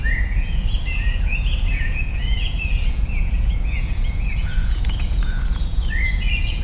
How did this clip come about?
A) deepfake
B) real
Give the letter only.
A